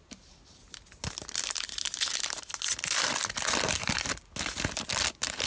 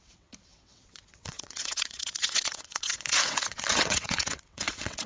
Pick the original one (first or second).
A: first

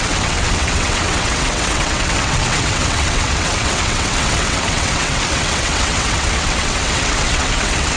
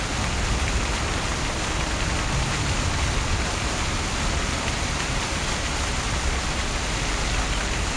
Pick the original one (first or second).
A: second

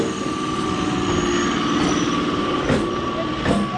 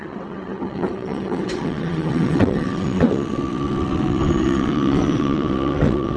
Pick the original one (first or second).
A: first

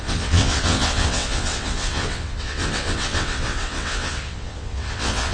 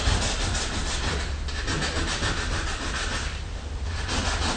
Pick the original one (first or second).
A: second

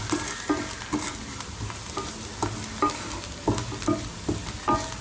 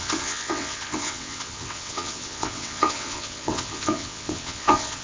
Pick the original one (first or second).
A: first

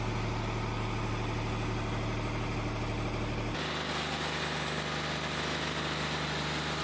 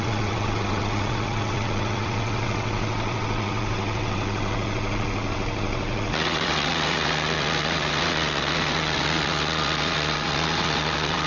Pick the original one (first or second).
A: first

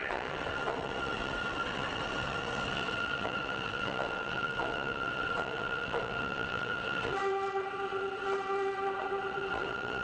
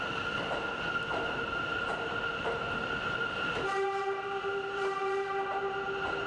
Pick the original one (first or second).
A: second